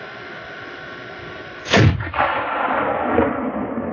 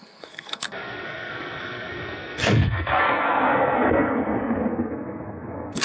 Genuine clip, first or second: first